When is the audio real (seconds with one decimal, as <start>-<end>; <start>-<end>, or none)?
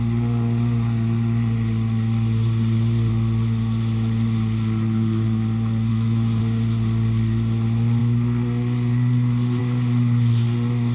0.0-5.9; 6.4-10.9